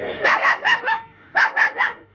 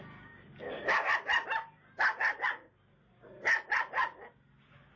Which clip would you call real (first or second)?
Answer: second